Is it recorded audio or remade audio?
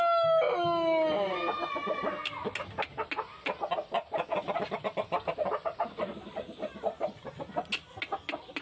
recorded